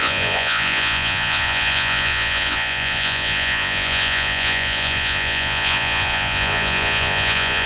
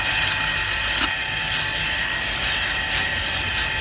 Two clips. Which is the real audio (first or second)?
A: second